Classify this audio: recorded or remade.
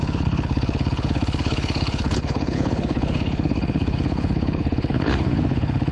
remade